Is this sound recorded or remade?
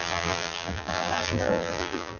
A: remade